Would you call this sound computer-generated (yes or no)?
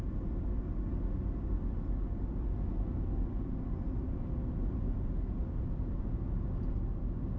no